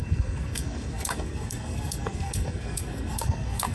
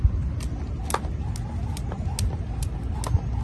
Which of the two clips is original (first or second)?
second